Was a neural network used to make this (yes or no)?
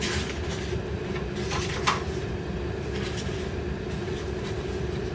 no